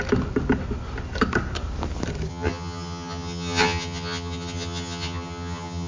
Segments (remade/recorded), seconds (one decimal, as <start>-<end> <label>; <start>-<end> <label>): 0.0-2.3 recorded; 2.3-5.9 remade